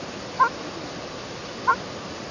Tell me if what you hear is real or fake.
real